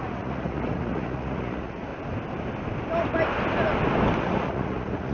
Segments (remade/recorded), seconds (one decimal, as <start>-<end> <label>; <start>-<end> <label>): 0.0-1.9 remade; 1.9-4.2 recorded; 4.2-5.1 remade